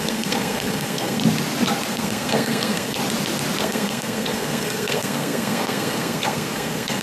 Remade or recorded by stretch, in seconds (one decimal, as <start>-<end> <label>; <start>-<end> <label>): 0.0-1.2 remade; 1.2-1.9 recorded; 1.9-3.0 remade; 3.0-3.6 recorded; 3.6-7.0 remade